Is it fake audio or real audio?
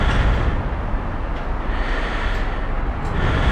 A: real